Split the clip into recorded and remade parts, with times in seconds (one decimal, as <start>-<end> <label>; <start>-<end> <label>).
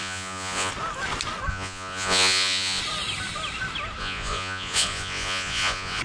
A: 0.0-0.7 remade; 0.7-1.5 recorded; 1.5-2.8 remade; 2.8-4.0 recorded; 4.0-6.0 remade